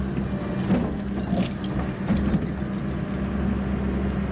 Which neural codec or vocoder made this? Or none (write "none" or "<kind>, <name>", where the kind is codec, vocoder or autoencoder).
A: none